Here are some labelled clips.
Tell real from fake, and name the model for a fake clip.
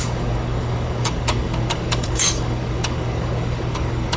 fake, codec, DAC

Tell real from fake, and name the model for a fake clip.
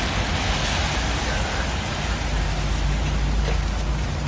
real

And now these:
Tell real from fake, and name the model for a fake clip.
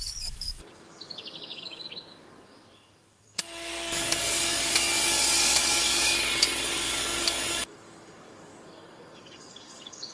fake, codec, DAC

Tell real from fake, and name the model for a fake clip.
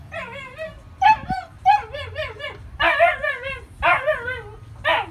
real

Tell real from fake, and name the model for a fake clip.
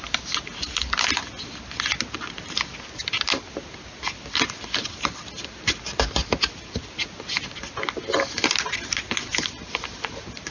real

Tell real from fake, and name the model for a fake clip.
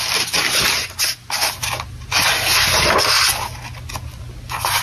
real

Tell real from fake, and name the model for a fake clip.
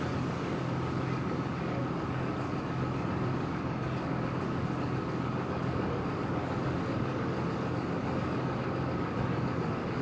fake, codec, DAC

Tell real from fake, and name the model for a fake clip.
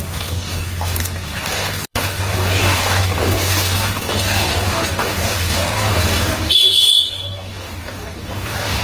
fake, codec, DAC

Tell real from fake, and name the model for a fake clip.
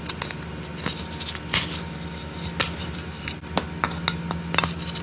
real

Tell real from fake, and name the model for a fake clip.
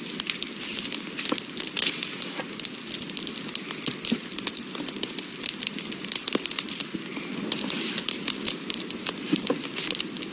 real